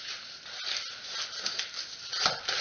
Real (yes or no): yes